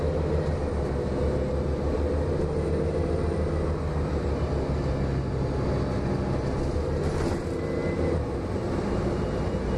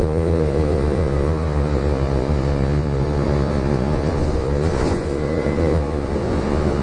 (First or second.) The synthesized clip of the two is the second